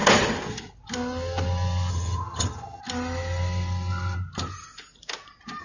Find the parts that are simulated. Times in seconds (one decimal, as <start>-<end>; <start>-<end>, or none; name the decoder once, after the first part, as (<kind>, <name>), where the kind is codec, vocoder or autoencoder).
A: 1.9-2.8 (vocoder, HiFi-GAN)